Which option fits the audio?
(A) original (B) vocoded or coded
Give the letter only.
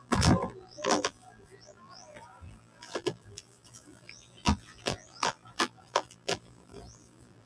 B